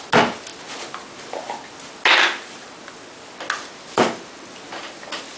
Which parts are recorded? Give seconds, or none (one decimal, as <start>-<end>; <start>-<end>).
0.0-5.4